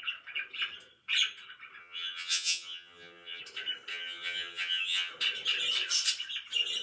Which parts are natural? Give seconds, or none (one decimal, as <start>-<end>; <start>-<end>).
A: 0.0-1.8; 3.4-3.9; 5.1-6.8